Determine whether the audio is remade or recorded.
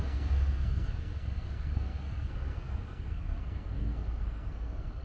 remade